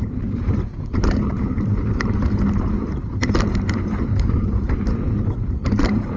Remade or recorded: remade